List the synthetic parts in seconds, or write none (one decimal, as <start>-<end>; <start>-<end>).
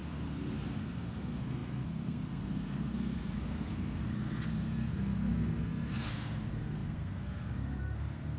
0.8-8.4